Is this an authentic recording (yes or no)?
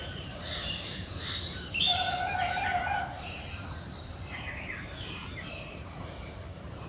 no